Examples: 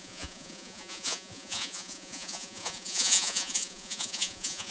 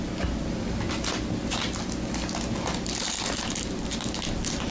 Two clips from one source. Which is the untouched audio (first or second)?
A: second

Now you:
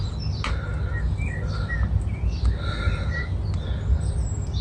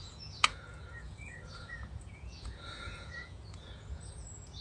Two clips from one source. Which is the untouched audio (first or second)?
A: first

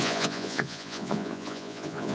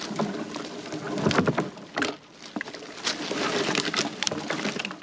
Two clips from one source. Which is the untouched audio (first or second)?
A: second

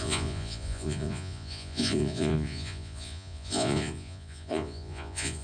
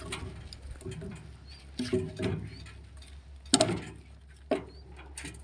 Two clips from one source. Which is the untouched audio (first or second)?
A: second